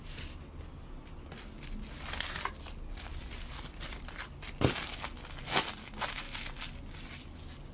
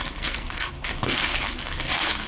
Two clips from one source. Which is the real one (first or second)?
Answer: first